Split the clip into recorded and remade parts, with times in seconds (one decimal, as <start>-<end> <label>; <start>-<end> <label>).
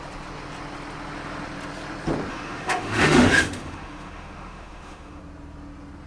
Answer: 0.0-2.3 recorded; 2.3-5.2 remade; 5.2-6.1 recorded